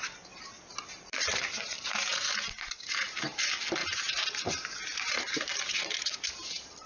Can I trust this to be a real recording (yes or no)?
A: no